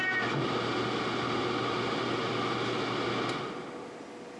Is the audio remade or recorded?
recorded